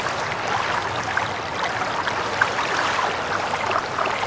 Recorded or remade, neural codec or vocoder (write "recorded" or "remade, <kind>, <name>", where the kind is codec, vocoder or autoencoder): recorded